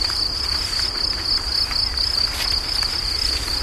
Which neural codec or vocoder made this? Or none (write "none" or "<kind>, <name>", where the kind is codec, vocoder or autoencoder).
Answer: none